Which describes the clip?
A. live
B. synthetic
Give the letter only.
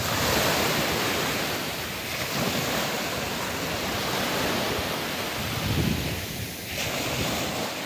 A